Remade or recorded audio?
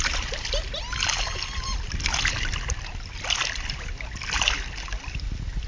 recorded